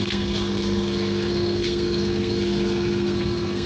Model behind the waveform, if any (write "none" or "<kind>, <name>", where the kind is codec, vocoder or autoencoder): codec, SNAC